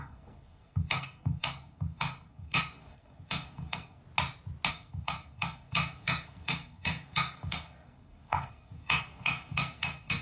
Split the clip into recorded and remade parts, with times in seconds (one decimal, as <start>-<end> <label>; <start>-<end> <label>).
0.0-4.0 remade; 4.0-4.7 recorded; 4.7-10.2 remade